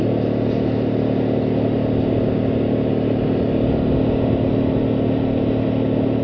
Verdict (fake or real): real